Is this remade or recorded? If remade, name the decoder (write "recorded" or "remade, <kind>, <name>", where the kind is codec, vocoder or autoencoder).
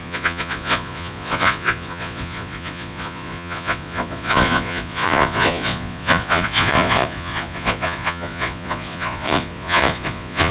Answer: remade, vocoder, Vocos